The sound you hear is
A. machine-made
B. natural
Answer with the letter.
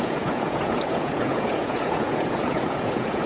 A